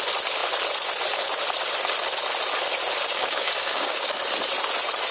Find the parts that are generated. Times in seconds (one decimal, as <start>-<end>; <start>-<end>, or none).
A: 3.1-4.2